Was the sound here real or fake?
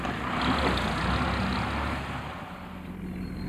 real